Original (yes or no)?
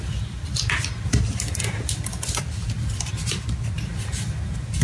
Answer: yes